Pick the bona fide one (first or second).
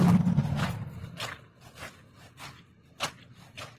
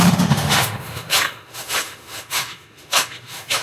first